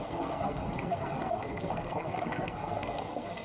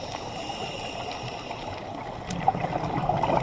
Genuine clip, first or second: second